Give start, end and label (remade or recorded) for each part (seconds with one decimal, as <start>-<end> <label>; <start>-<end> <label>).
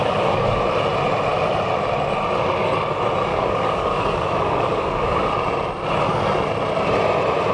0.0-0.6 remade; 0.6-3.3 recorded; 3.3-5.3 remade; 5.3-7.5 recorded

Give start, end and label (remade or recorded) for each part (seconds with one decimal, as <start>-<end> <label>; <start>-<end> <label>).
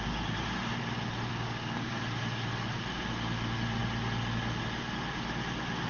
0.0-1.3 recorded; 1.3-2.0 remade; 2.0-5.9 recorded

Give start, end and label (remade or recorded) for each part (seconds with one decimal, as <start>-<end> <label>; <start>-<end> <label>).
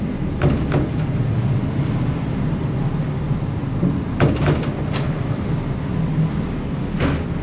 0.0-7.4 recorded